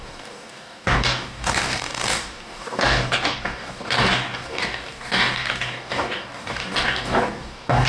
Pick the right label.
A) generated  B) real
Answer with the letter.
A